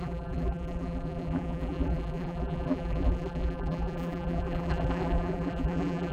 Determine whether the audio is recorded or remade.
remade